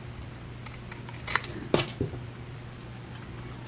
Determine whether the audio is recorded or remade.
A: recorded